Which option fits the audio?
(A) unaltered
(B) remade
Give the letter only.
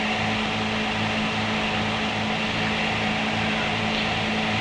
A